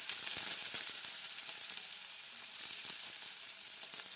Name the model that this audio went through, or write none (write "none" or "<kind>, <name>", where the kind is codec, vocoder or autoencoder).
vocoder, BigVGAN v2